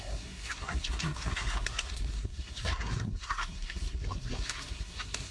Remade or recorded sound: remade